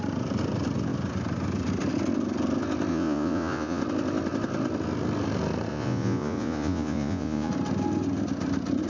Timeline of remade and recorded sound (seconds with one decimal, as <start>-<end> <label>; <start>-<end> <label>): 0.0-2.9 recorded; 2.9-3.8 remade; 3.8-5.7 recorded; 5.7-7.5 remade; 7.5-8.9 recorded